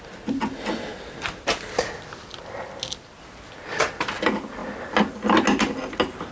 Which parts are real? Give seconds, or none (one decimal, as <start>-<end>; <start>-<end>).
0.0-6.3